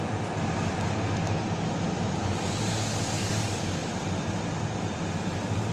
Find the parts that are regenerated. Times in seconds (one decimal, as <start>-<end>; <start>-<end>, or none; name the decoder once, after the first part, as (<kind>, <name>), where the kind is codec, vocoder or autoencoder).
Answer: 3.2-3.9 (codec, DAC)